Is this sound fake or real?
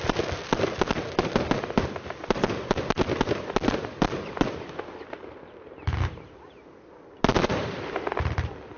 real